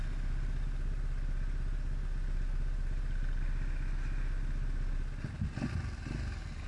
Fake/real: real